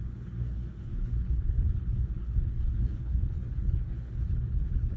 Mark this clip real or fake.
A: fake